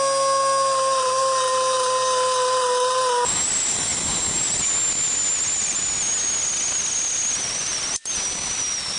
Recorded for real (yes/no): yes